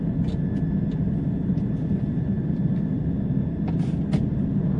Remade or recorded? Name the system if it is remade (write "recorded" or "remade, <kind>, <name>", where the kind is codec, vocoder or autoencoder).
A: recorded